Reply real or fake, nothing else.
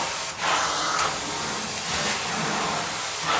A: real